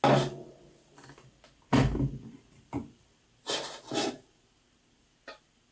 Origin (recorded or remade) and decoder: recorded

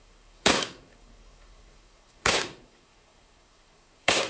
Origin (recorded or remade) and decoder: remade, codec, SNAC